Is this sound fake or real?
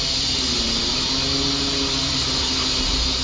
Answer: real